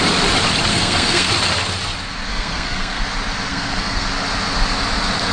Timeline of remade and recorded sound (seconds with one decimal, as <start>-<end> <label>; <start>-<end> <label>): 0.0-0.7 recorded; 0.7-1.3 remade; 1.3-2.3 recorded; 2.3-3.0 remade; 3.0-3.5 recorded; 3.5-4.1 remade; 4.1-5.3 recorded